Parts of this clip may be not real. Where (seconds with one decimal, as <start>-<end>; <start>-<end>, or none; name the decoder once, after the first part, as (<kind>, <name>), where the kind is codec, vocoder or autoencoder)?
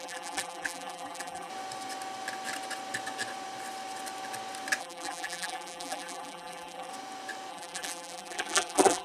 0.0-1.5 (vocoder, BigVGAN v2); 4.8-6.9; 7.5-9.0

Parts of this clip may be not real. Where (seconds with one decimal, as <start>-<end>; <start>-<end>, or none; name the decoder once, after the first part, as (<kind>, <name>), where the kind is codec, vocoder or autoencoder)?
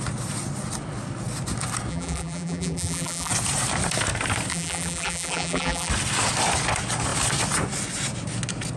1.9-3.3 (vocoder, BigVGAN v2); 4.5-5.9